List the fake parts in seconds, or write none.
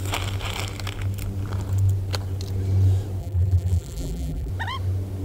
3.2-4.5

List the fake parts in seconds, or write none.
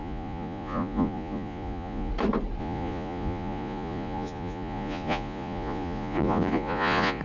0.0-2.1; 2.6-7.2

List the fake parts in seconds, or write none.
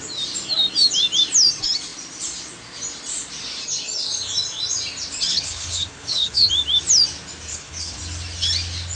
5.3-6.5; 7.5-8.0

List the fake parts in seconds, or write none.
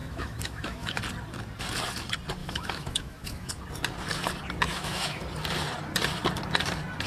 0.0-1.0; 2.4-3.5; 4.7-5.2